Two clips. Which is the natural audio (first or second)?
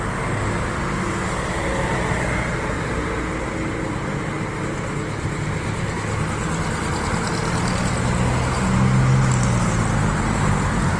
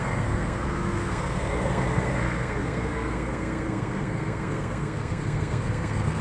first